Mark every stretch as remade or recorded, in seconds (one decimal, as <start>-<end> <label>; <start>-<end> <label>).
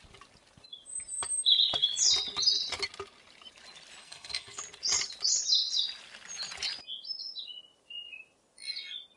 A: 0.0-4.0 recorded; 4.0-4.6 remade; 4.6-9.2 recorded